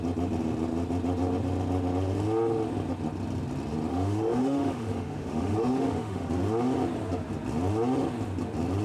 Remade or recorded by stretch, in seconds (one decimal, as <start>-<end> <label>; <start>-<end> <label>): 0.0-3.9 recorded; 3.9-6.3 remade; 6.3-8.8 recorded